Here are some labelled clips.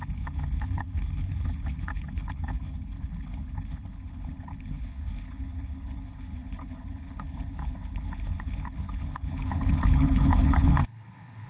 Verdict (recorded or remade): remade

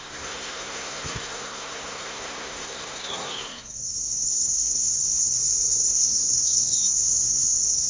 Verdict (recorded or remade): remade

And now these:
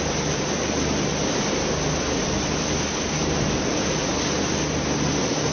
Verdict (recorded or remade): recorded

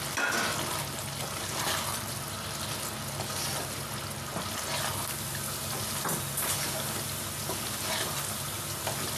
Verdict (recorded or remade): recorded